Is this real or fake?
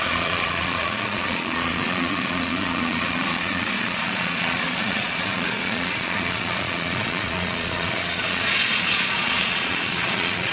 fake